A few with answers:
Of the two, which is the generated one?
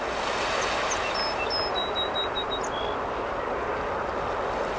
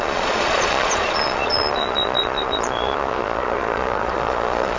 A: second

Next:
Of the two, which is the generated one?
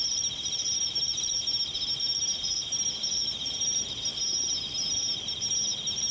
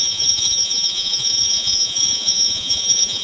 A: second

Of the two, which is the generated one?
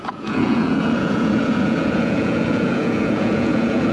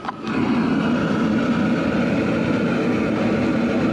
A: first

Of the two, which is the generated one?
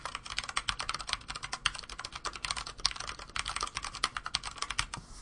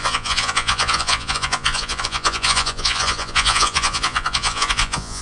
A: second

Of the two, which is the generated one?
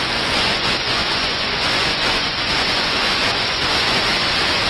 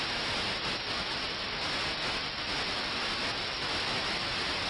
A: first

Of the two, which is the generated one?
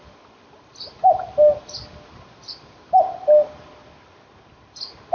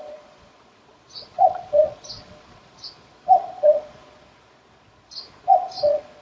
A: second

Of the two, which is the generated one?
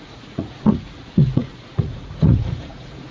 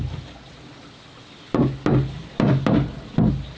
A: first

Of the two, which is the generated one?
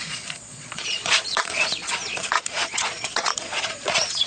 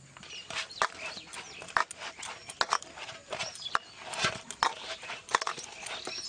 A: first